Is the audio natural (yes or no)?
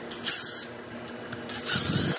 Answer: yes